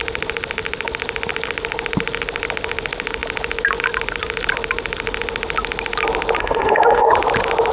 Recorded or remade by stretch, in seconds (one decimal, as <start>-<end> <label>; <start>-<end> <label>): 0.0-6.4 recorded; 6.4-7.1 remade; 7.1-7.7 recorded